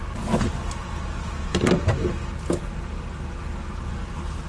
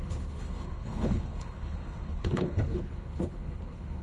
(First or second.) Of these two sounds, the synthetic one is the second